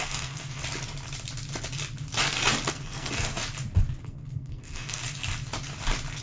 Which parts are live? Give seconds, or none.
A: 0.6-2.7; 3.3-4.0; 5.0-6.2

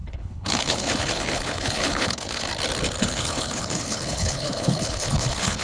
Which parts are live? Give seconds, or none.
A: 2.5-3.0